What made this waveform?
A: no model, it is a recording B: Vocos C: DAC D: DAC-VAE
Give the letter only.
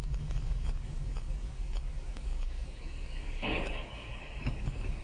C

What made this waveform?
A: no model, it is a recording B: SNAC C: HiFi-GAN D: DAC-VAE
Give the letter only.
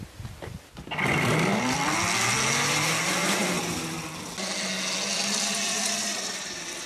A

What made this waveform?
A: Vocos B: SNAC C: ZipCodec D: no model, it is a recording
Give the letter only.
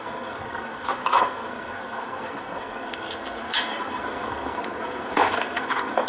B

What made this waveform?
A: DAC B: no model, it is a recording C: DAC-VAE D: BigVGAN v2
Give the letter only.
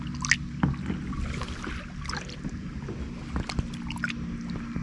B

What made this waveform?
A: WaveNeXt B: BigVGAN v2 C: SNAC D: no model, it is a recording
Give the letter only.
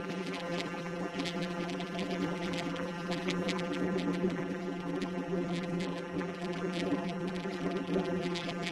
B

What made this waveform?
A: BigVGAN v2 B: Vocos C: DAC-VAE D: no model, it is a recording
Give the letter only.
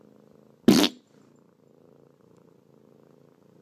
D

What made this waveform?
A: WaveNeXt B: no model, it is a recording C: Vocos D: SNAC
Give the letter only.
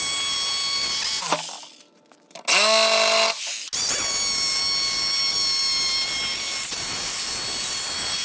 B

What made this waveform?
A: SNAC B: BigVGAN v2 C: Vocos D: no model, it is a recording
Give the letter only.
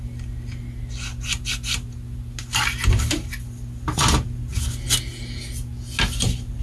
D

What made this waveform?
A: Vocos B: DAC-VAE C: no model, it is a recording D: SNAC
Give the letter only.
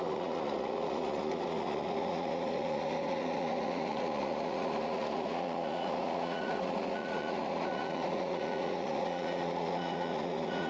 A